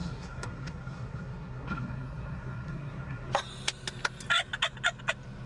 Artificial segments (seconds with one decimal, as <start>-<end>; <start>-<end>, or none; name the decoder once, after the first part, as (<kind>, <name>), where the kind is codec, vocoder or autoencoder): 0.0-3.3 (codec, SNAC)